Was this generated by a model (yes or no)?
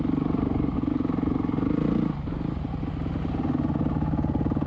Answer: no